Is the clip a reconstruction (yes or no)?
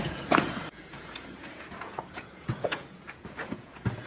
yes